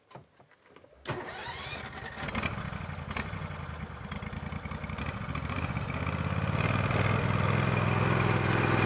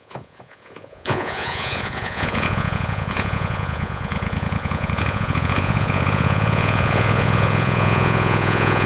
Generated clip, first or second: second